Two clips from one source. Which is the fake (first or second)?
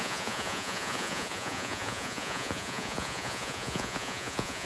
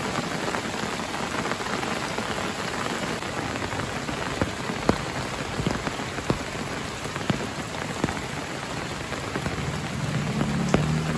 first